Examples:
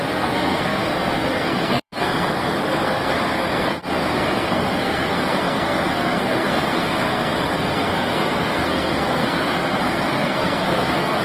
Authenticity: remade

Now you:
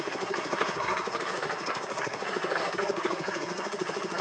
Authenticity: remade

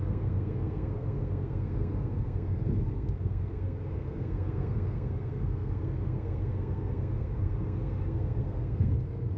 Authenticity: remade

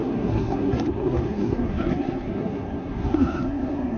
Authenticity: remade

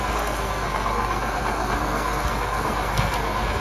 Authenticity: remade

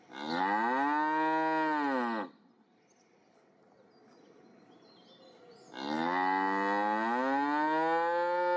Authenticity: recorded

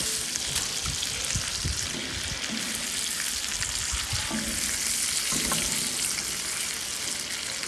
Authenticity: recorded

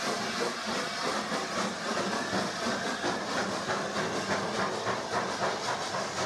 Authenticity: recorded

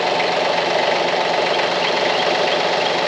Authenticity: recorded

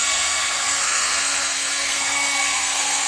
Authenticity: remade